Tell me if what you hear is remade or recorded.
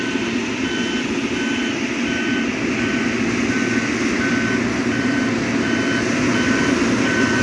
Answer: recorded